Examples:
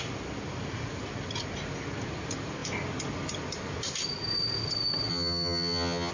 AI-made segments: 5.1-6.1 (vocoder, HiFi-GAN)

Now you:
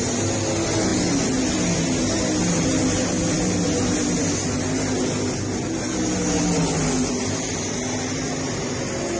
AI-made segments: none

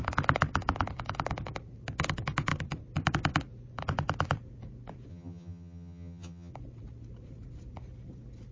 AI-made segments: 5.1-6.5 (vocoder, HiFi-GAN)